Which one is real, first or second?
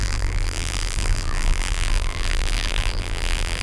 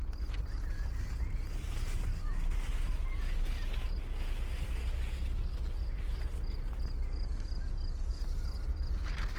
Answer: second